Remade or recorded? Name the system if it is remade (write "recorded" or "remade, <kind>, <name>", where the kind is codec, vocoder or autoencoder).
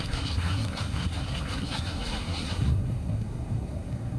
remade, codec, SNAC